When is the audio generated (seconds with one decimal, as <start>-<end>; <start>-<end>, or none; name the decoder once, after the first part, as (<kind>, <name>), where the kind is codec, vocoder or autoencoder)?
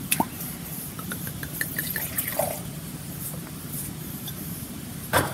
0.0-5.3 (vocoder, BigVGAN v2)